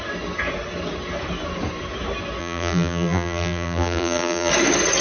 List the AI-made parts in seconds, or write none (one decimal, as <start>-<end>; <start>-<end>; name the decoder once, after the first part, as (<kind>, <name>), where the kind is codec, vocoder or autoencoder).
2.4-4.5 (vocoder, BigVGAN v2)